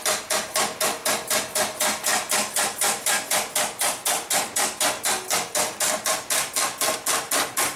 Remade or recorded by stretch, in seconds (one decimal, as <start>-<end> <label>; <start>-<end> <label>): 0.0-7.8 recorded

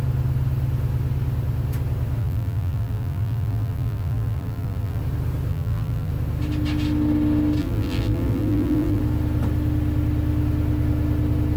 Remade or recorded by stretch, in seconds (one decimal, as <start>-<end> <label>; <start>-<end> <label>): 0.0-2.2 recorded; 2.2-5.0 remade; 5.0-5.5 recorded; 5.5-6.1 remade; 6.1-7.6 recorded; 7.6-9.0 remade; 9.0-11.6 recorded

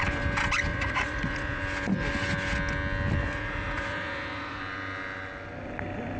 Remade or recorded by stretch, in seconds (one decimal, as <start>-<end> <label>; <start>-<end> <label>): 0.0-0.7 recorded; 0.7-1.6 remade; 1.6-3.2 recorded; 3.2-4.6 remade; 4.6-6.2 recorded

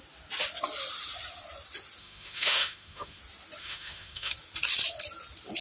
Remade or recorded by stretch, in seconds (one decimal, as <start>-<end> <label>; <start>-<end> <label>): 0.0-2.0 recorded; 2.0-3.2 remade; 3.2-3.6 recorded; 3.6-4.3 remade; 4.3-5.6 recorded